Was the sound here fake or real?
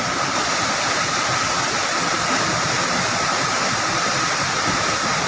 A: real